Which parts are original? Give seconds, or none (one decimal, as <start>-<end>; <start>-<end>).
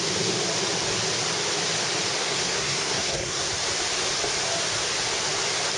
0.0-2.2; 3.5-5.8